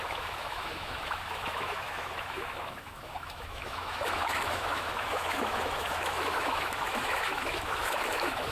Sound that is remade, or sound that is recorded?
remade